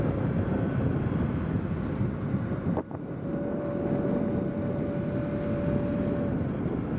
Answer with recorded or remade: recorded